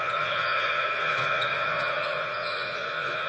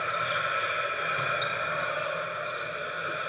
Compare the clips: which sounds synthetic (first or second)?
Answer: first